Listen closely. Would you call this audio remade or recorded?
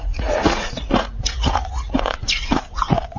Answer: remade